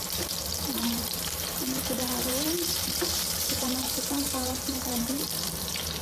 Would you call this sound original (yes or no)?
no